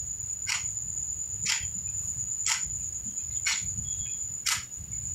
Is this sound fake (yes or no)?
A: no